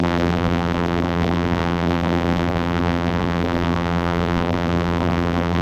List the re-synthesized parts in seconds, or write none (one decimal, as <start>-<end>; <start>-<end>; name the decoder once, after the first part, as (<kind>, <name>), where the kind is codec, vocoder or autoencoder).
0.0-5.6 (vocoder, BigVGAN v2)

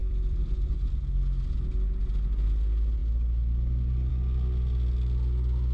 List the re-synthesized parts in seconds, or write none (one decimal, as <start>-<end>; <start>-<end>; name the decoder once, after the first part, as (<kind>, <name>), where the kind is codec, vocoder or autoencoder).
0.0-1.0 (vocoder, BigVGAN v2)

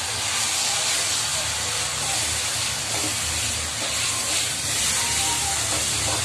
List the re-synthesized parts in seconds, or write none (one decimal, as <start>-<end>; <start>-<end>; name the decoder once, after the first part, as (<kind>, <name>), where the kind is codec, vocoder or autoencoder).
none

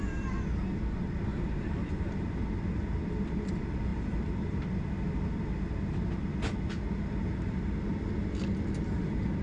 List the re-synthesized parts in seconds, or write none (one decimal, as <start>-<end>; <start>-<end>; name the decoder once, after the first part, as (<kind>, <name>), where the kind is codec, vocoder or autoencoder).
1.3-2.4 (vocoder, BigVGAN v2)